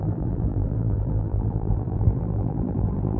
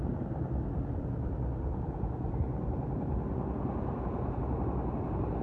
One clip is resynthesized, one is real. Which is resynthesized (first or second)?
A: first